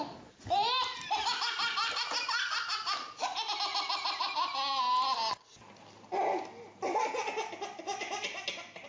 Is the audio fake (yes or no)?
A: no